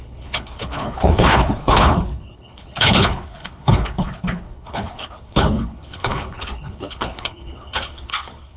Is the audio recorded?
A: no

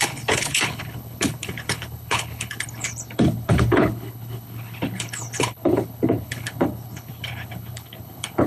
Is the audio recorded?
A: no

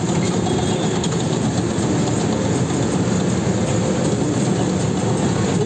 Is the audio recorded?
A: yes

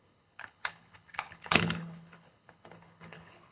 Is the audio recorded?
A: no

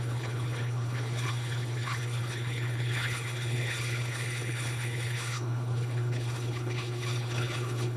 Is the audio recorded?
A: no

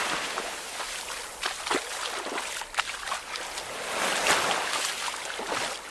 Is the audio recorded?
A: yes